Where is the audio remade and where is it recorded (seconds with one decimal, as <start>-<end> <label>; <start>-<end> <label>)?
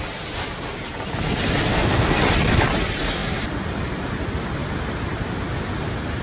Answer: 0.0-1.7 recorded; 1.7-2.2 remade; 2.2-6.2 recorded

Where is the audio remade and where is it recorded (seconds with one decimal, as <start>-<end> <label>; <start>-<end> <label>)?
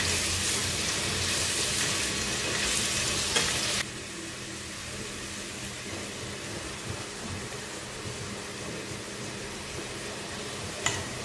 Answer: 0.0-0.6 recorded; 0.6-1.8 remade; 1.8-11.2 recorded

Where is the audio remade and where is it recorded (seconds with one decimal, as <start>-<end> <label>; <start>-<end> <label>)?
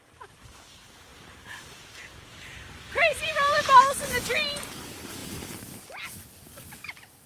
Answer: 0.0-1.1 recorded; 1.1-3.8 remade; 3.8-5.2 recorded; 5.2-6.0 remade; 6.0-7.3 recorded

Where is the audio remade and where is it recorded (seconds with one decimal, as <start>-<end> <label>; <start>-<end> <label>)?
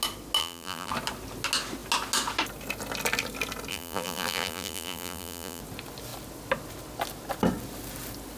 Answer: 0.0-0.4 recorded; 0.4-0.9 remade; 0.9-3.7 recorded; 3.7-5.6 remade; 5.6-8.4 recorded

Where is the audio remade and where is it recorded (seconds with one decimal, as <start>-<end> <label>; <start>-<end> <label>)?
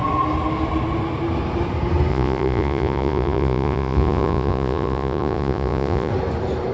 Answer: 0.0-2.1 recorded; 2.1-6.1 remade; 6.1-6.7 recorded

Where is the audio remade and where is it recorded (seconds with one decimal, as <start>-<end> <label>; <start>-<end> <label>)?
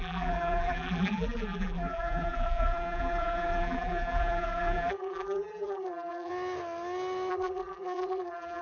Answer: 0.0-6.3 remade; 6.3-7.3 recorded; 7.3-8.6 remade